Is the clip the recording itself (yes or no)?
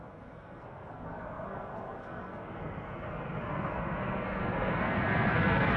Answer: no